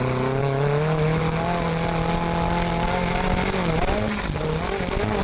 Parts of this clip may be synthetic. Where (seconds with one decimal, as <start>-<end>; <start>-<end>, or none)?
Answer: 0.4-1.2